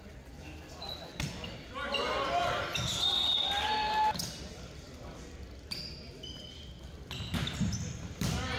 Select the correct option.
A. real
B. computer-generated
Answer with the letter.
A